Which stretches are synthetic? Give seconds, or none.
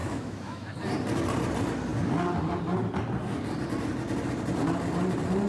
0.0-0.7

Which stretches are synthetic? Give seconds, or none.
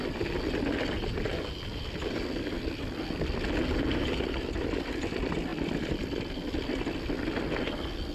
none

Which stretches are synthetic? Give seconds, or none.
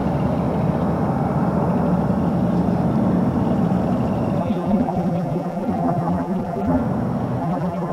4.4-6.8; 7.4-7.9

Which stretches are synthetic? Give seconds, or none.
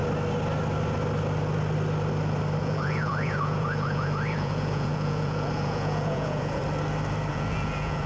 2.6-6.6; 7.3-8.1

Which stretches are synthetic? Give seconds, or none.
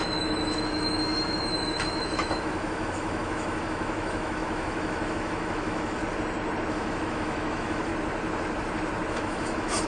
0.0-6.0; 6.7-7.9; 9.1-9.9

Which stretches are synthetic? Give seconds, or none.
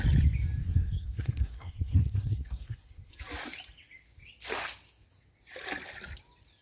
0.6-3.1